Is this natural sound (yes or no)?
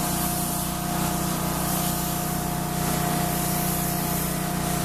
yes